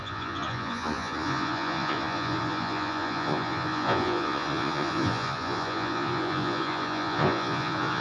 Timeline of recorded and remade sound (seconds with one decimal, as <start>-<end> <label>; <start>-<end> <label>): 0.0-8.0 remade